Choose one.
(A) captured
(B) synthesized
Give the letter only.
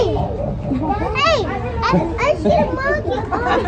A